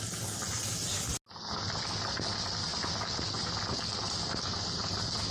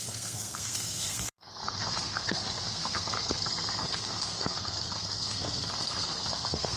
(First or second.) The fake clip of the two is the second